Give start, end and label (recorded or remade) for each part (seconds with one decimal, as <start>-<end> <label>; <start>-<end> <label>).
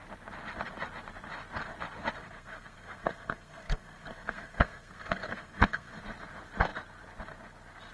0.0-2.2 recorded; 2.2-6.0 remade; 6.0-7.9 recorded